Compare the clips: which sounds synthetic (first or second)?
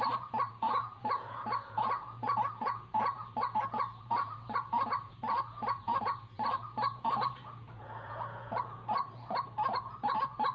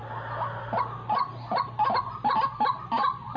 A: first